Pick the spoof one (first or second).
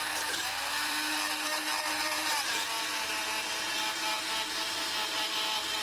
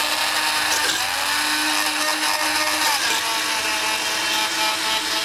first